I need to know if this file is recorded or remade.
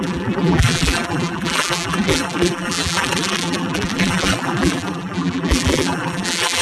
remade